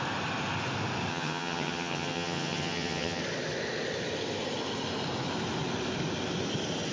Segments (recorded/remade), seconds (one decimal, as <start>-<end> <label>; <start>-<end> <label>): 0.0-1.1 recorded; 1.1-3.2 remade; 3.2-6.9 recorded